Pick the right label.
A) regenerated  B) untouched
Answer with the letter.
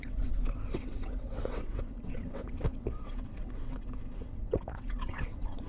A